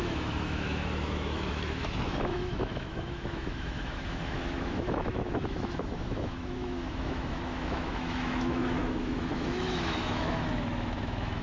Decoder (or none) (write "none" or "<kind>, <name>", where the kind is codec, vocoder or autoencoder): autoencoder, DAC-VAE